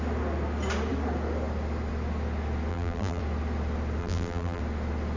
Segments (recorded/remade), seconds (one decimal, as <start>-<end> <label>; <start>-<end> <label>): 0.0-2.7 recorded; 2.7-3.2 remade; 3.2-4.0 recorded; 4.0-4.6 remade; 4.6-5.2 recorded